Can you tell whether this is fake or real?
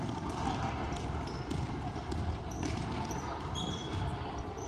real